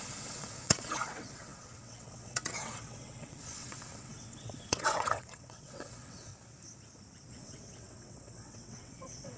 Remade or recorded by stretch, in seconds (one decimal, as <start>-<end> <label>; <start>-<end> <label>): 0.0-6.3 remade; 6.3-7.3 recorded; 7.3-9.4 remade